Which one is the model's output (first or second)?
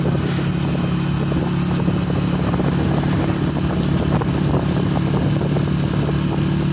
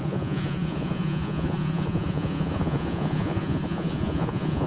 second